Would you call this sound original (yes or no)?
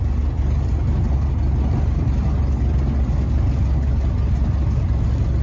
yes